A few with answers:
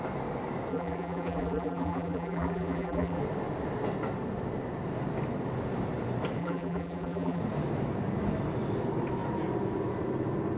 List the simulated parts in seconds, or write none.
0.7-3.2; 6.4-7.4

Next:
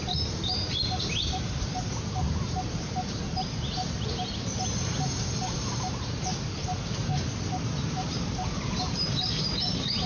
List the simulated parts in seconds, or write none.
0.0-7.1; 7.6-10.1

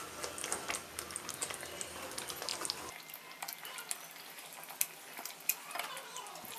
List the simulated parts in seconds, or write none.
none

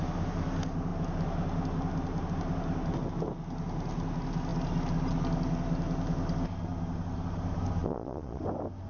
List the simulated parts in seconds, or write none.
7.8-8.4

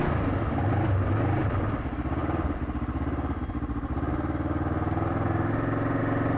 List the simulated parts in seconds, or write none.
none